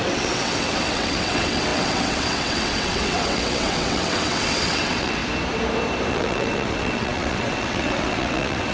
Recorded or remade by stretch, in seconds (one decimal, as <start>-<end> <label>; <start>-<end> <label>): 0.0-5.2 remade; 5.2-6.1 recorded; 6.1-8.7 remade

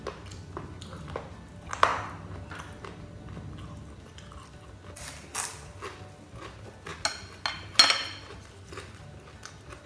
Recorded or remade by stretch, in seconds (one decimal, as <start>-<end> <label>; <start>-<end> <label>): 0.0-9.9 recorded

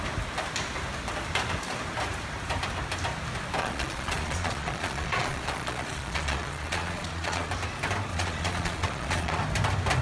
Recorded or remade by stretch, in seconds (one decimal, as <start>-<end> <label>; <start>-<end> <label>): 0.0-3.6 recorded; 3.6-7.5 remade; 7.5-8.1 recorded; 8.1-9.4 remade; 9.4-10.0 recorded

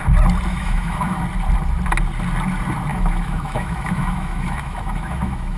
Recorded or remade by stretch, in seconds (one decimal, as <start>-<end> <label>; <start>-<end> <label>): 0.0-0.5 recorded; 0.5-1.2 remade; 1.2-2.9 recorded; 2.9-5.6 remade

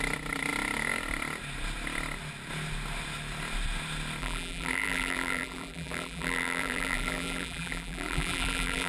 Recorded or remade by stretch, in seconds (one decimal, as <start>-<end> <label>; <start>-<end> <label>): 0.0-4.2 recorded; 4.2-8.9 remade

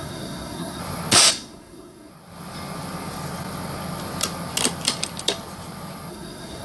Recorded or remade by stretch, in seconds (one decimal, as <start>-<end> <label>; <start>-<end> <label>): 0.0-0.8 remade; 0.8-1.3 recorded; 1.3-2.1 remade; 2.1-6.1 recorded; 6.1-6.6 remade

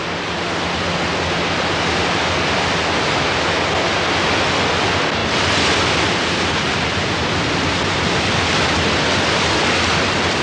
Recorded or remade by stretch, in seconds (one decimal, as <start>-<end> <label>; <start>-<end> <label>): 0.0-10.4 recorded